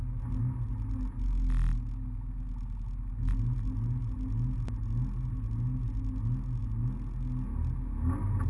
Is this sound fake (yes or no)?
no